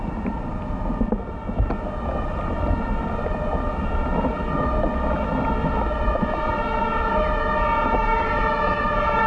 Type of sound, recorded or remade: recorded